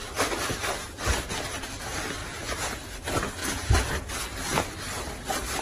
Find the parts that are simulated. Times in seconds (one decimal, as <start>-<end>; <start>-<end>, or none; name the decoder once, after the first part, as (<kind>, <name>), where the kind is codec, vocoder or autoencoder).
2.2-2.7 (vocoder, Vocos); 3.4-4.1